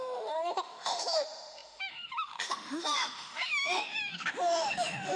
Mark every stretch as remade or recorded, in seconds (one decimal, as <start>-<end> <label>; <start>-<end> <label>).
0.0-5.2 remade